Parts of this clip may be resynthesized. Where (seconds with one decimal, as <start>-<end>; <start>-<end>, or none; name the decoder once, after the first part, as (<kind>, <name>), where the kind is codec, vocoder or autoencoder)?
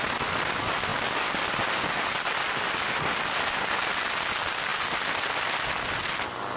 0.9-4.1 (vocoder, BigVGAN v2)